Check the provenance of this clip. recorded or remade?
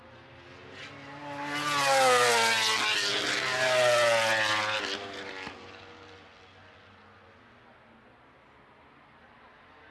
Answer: recorded